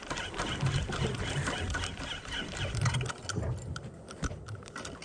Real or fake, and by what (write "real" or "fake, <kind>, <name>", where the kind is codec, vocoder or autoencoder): real